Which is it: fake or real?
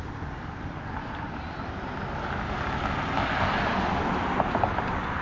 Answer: real